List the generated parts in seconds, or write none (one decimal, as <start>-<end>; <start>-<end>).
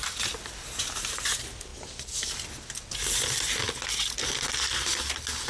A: none